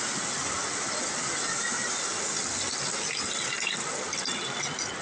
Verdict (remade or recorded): recorded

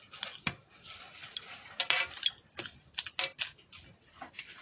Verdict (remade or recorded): recorded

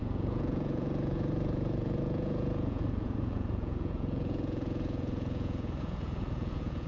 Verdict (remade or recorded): remade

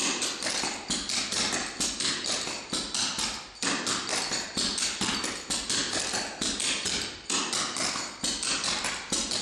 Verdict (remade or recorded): recorded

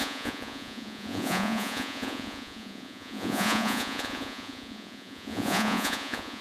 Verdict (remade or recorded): remade